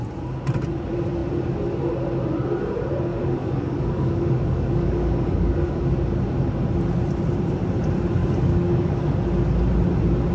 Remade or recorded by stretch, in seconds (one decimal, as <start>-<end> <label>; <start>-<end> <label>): 0.0-3.1 recorded; 3.1-5.8 remade; 5.8-8.2 recorded; 8.2-9.1 remade; 9.1-10.3 recorded